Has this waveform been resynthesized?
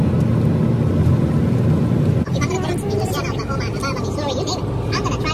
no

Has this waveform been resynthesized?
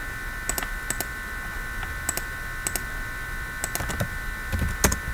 no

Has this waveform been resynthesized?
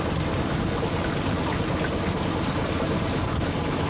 no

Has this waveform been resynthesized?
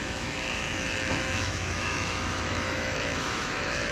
yes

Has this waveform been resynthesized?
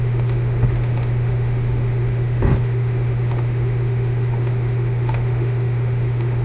yes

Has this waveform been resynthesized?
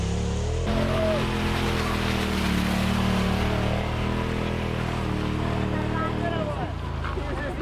no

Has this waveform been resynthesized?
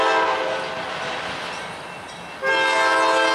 no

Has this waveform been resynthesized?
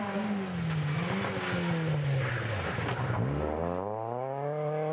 no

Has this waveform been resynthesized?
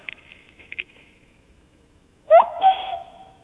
yes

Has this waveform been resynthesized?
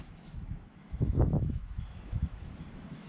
yes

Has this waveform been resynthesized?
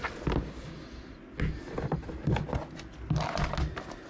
no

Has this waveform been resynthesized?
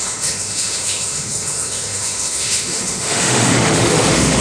yes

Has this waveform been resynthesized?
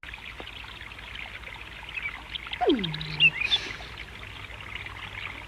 no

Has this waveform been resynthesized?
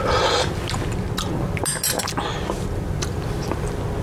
no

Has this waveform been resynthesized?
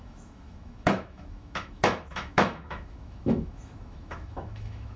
yes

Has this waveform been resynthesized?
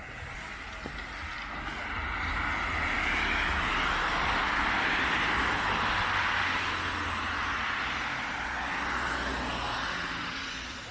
no